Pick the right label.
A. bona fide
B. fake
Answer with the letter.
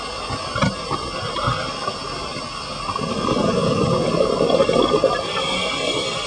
A